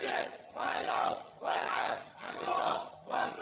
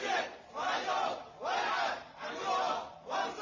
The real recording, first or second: second